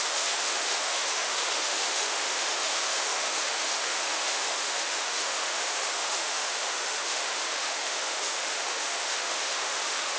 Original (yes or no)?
no